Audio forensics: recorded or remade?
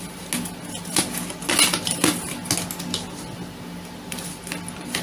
recorded